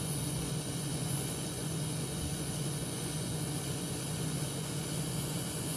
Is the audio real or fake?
fake